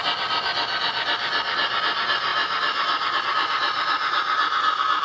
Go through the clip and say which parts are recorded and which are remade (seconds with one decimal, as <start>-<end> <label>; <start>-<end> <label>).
0.0-2.3 recorded; 2.3-3.2 remade; 3.2-5.0 recorded